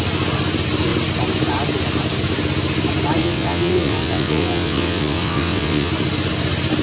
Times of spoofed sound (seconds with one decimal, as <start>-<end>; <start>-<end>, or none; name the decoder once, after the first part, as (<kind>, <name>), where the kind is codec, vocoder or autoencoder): 3.2-5.9 (vocoder, WaveNeXt)